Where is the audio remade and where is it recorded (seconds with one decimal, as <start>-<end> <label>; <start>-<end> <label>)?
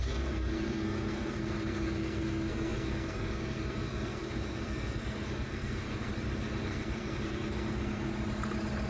0.0-6.1 remade; 6.1-6.6 recorded; 6.6-8.1 remade; 8.1-8.9 recorded